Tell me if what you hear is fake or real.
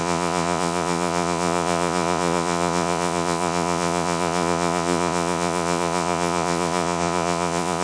fake